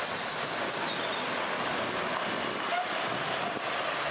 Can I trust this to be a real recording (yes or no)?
yes